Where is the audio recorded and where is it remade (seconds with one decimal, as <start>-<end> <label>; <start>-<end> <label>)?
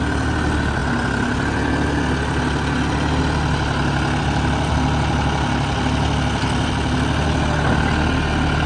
0.0-8.7 recorded